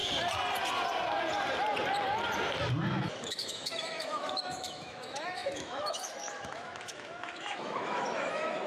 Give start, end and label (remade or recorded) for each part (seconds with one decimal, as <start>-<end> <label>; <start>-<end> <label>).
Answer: 0.0-2.9 recorded; 2.9-8.7 remade